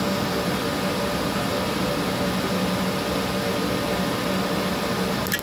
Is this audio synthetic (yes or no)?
no